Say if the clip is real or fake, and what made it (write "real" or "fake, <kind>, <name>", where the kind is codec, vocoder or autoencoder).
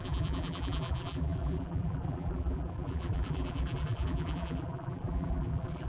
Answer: fake, vocoder, BigVGAN v2